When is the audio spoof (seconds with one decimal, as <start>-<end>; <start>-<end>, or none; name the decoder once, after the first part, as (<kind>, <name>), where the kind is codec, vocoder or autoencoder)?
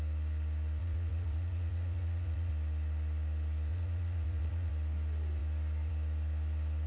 0.8-2.5 (vocoder, Vocos); 3.7-4.7